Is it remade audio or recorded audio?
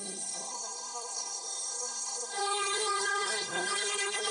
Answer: remade